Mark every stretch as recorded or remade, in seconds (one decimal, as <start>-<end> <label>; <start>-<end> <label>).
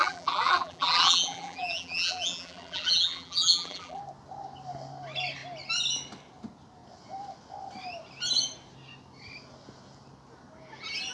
0.0-4.0 remade; 4.0-11.1 recorded